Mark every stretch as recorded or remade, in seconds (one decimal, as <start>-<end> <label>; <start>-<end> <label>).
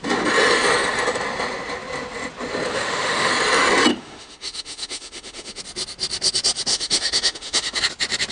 0.0-2.7 recorded; 2.7-3.3 remade; 3.3-3.9 recorded; 3.9-5.6 remade; 5.6-6.7 recorded; 6.7-7.8 remade; 7.8-8.3 recorded